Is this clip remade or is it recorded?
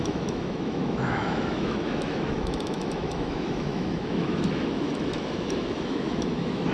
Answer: remade